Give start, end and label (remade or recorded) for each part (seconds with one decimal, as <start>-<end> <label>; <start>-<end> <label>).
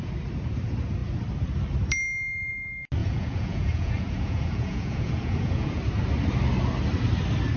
0.0-3.0 recorded; 3.0-5.8 remade; 5.8-7.6 recorded